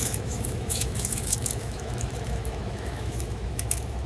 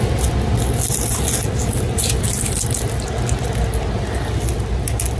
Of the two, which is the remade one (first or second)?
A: first